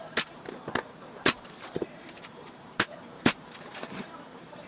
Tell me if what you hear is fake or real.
fake